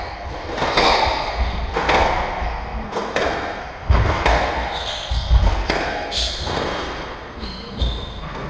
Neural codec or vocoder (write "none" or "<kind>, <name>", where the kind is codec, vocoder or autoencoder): codec, SNAC